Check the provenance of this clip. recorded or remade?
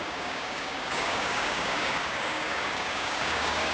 remade